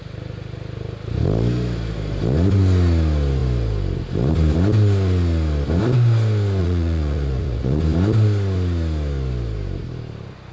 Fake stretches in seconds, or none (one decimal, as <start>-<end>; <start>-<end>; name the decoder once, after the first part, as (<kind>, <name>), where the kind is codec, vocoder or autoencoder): 6.6-7.8 (vocoder, Vocos)